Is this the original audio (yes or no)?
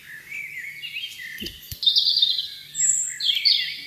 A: yes